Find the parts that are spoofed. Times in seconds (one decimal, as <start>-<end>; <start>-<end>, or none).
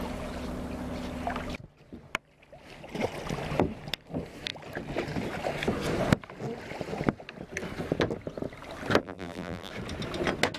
9.0-9.7